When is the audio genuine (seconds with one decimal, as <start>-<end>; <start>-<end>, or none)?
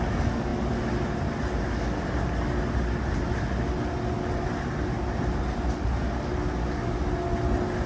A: 0.0-7.9